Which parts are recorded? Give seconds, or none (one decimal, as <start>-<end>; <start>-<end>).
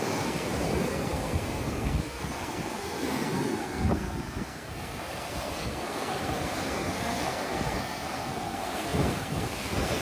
none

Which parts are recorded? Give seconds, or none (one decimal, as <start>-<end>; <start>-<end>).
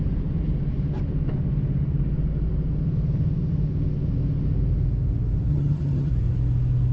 0.0-5.5; 6.1-6.9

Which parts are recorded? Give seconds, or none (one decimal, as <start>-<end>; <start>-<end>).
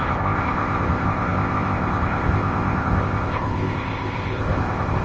none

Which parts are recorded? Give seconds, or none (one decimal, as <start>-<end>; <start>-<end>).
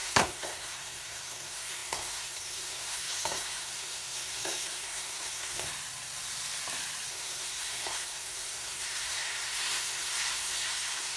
5.7-7.1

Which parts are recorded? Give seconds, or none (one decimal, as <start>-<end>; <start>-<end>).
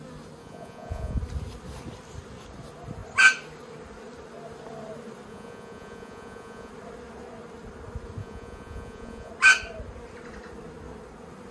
0.0-0.4; 1.2-5.3; 6.7-8.2; 9.3-11.5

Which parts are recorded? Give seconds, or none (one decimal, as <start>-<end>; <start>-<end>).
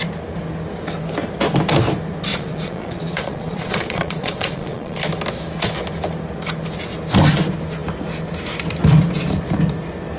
0.0-2.3; 5.0-10.2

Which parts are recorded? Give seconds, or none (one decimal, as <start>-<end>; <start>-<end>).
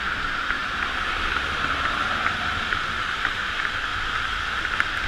0.0-5.1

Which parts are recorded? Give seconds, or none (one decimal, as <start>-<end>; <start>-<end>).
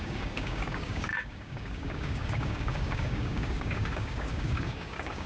none